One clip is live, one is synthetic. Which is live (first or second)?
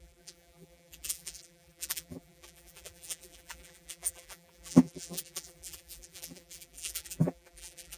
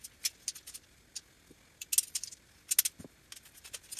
second